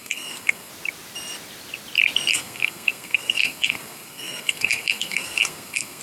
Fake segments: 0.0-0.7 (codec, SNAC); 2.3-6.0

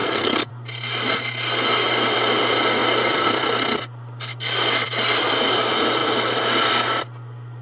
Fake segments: 0.0-0.5 (codec, SNAC)

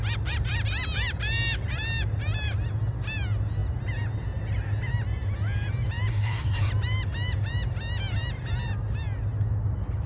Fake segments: 6.1-6.7 (codec, SNAC)

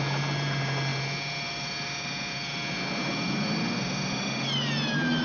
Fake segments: none

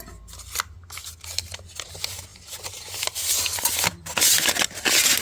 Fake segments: none

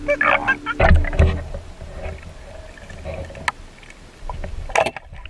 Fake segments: none

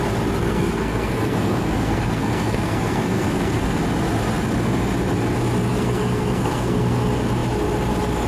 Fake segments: 0.4-3.8 (codec, SNAC); 5.7-7.0